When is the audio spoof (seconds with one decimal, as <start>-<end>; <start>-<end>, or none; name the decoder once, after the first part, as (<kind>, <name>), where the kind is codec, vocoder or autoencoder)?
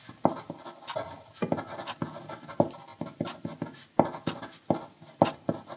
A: none